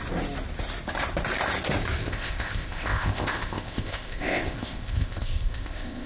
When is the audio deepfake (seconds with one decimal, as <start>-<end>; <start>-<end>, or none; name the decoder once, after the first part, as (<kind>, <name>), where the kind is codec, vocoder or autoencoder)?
2.0-6.1 (codec, ZipCodec)